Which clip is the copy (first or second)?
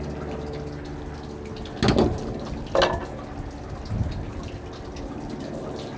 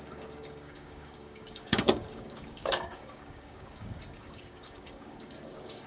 second